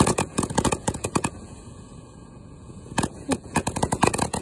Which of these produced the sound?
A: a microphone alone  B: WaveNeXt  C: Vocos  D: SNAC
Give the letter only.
C